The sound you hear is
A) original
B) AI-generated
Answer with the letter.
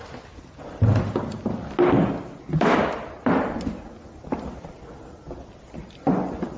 A